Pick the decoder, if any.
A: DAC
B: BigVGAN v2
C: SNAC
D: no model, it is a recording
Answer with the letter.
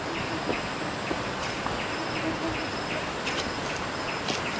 D